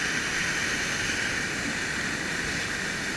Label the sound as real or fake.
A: real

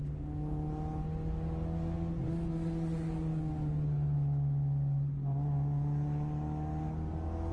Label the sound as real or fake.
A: real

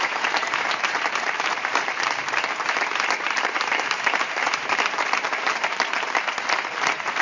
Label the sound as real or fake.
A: fake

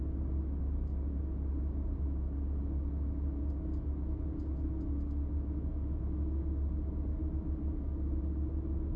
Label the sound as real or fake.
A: real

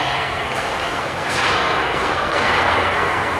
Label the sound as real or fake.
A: fake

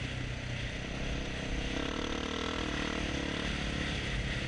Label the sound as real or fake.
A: real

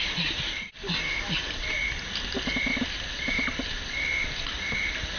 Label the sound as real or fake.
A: real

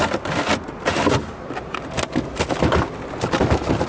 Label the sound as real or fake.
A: real